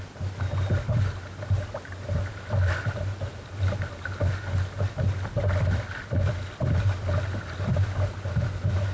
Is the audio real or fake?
real